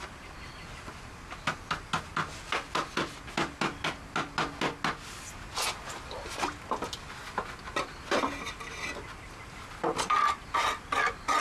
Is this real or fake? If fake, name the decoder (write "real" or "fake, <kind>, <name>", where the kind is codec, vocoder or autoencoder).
real